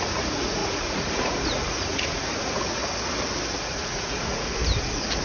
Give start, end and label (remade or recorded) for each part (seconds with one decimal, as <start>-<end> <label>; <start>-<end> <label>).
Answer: 0.0-2.8 remade; 2.8-3.5 recorded; 3.5-4.5 remade; 4.5-5.2 recorded